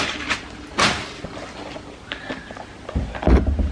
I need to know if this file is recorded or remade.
recorded